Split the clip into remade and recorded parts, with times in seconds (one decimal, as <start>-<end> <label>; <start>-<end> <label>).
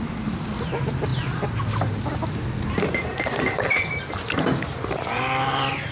0.0-5.9 recorded